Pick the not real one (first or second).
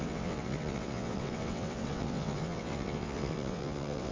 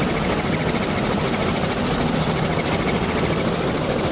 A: first